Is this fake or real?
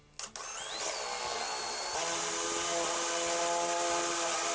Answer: real